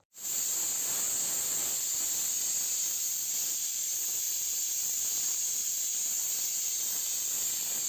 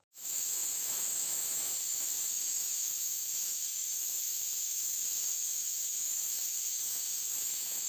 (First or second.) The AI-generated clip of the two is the second